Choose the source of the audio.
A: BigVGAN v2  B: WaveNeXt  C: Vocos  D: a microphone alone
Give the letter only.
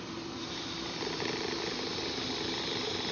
D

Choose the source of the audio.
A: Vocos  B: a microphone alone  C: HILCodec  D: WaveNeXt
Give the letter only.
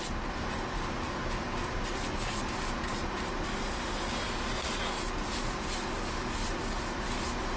B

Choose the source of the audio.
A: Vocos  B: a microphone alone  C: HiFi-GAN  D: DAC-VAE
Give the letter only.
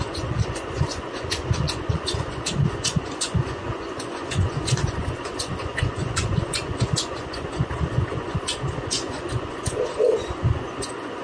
A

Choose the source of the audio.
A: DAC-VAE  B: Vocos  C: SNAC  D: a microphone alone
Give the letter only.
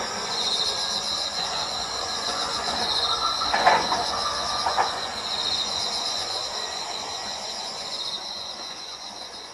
B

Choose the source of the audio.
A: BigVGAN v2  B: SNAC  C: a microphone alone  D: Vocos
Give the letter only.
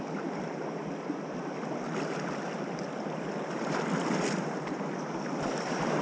C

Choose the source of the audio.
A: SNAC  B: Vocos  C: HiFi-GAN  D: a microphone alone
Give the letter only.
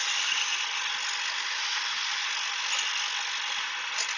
D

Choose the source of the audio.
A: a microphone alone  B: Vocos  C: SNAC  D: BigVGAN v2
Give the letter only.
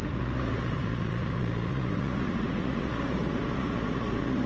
B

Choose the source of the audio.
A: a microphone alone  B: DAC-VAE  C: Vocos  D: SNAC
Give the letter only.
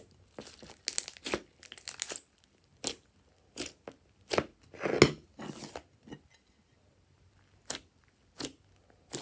A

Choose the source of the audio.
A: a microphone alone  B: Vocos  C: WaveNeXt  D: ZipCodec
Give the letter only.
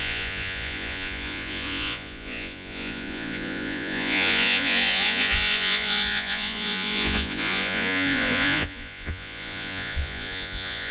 B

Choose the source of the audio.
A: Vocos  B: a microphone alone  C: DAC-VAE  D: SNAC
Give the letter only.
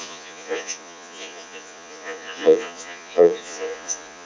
A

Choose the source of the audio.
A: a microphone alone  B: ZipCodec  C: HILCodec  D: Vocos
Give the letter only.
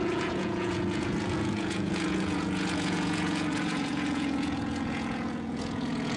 D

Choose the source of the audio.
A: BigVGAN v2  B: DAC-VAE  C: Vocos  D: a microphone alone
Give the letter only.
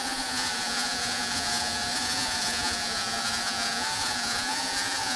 C